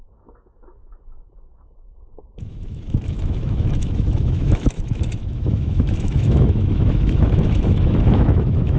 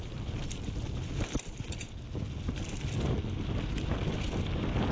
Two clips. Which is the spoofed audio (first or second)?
first